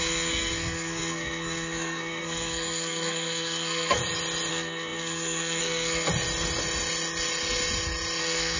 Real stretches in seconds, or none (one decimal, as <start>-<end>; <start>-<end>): 4.0-4.5; 6.1-8.2